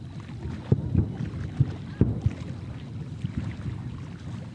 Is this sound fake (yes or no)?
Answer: no